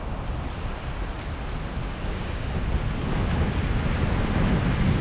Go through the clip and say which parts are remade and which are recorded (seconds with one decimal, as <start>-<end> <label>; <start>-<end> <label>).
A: 0.0-1.8 recorded; 1.8-2.6 remade; 2.6-5.0 recorded